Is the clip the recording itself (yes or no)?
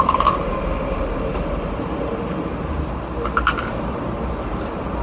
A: no